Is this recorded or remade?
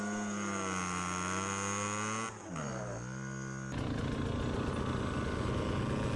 recorded